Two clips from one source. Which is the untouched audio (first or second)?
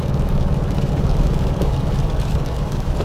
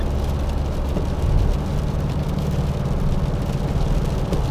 second